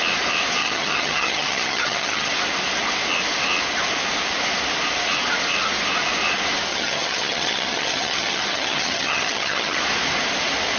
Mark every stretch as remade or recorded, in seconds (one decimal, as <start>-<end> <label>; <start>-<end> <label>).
0.0-0.6 recorded; 0.6-2.3 remade; 2.3-6.7 recorded; 6.7-9.8 remade; 9.8-10.8 recorded